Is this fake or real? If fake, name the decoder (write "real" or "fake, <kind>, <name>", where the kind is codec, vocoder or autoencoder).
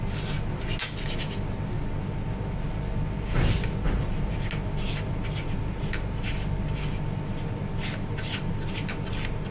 real